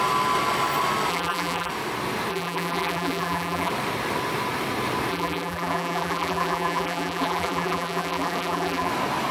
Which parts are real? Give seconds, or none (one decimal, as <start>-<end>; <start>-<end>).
0.0-1.1; 1.7-2.3; 3.7-5.1; 8.9-9.3